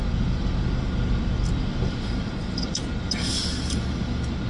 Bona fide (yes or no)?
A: yes